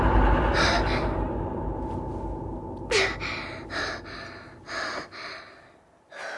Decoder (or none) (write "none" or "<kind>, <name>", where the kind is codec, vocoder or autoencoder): none